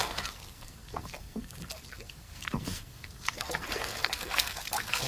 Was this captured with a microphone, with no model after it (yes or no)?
no